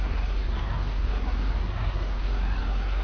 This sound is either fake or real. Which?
fake